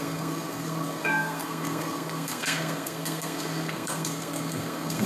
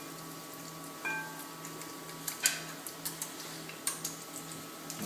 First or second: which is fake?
first